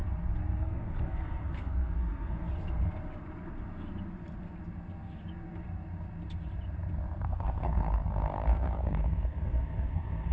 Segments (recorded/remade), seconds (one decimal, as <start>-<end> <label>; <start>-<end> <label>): 0.0-0.6 recorded; 0.6-2.5 remade; 2.5-7.2 recorded; 7.2-10.3 remade